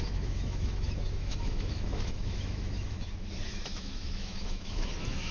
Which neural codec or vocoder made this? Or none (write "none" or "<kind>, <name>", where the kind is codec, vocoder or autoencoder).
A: autoencoder, DAC-VAE